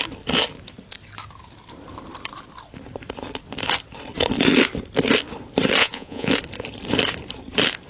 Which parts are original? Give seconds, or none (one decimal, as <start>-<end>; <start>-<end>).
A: 0.0-5.8; 6.3-7.9